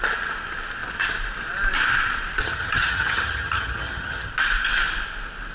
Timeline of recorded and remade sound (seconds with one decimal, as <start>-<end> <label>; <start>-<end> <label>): 0.0-2.4 recorded; 2.4-4.3 remade; 4.3-5.5 recorded